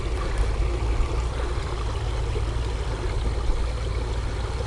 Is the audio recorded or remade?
recorded